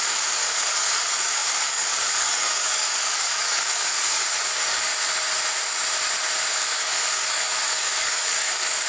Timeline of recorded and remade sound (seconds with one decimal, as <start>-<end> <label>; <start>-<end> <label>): 0.0-4.9 remade; 4.9-6.5 recorded; 6.5-8.9 remade